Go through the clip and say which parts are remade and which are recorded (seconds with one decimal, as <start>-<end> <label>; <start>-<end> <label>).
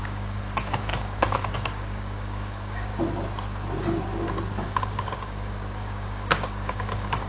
0.0-2.9 remade; 2.9-4.6 recorded; 4.6-7.3 remade